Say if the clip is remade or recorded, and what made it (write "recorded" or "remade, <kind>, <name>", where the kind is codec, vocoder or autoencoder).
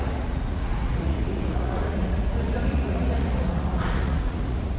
remade, vocoder, Vocos